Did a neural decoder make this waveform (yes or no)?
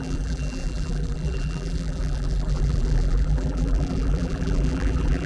yes